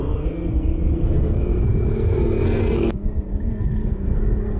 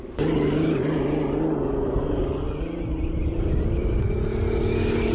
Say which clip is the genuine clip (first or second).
second